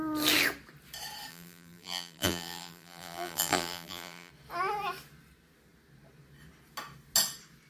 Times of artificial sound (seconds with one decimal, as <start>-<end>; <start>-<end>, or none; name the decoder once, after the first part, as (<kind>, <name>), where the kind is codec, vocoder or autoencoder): 1.3-4.3 (vocoder, BigVGAN v2)